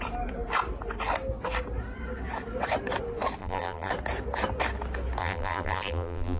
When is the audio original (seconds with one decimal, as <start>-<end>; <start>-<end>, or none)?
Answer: 0.0-3.4; 3.9-5.2